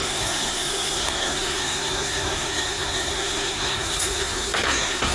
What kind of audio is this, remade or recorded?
remade